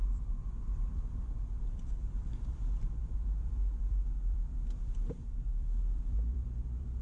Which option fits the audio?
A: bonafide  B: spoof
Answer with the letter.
B